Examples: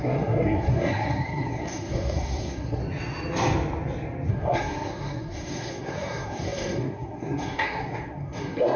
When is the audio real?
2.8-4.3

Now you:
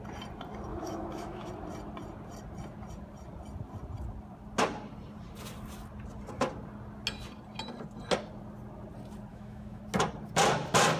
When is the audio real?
0.0-0.7; 1.5-9.3; 9.8-11.0

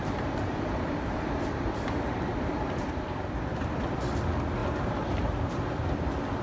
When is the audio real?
3.8-4.6; 5.5-6.4